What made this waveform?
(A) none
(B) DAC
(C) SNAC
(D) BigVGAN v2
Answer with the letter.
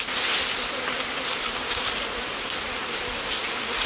A